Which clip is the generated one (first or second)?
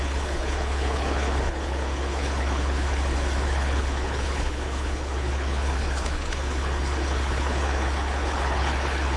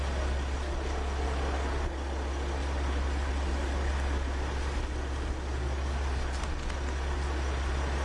first